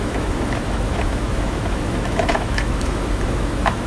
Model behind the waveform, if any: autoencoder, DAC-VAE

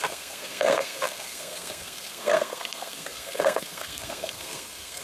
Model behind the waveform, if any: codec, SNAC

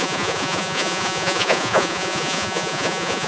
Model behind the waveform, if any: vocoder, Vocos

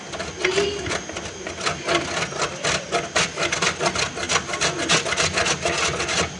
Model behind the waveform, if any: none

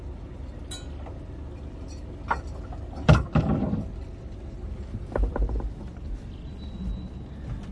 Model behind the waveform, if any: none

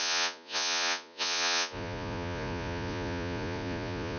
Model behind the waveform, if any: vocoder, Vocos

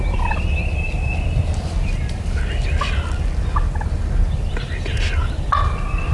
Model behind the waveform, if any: none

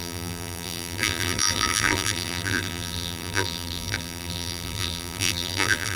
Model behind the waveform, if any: vocoder, BigVGAN v2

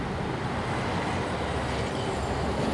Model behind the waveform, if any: none